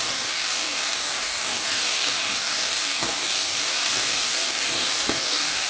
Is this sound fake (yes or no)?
yes